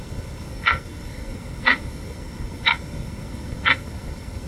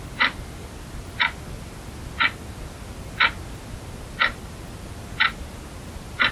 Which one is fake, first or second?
first